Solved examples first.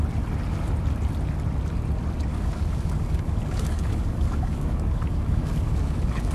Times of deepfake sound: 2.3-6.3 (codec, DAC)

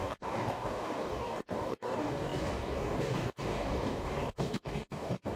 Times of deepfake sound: 0.0-5.4 (codec, DAC)

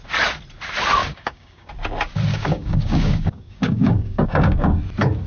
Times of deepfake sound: 1.0-1.7 (codec, DAC); 2.3-4.8